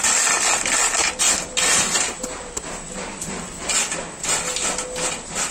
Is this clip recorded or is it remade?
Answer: recorded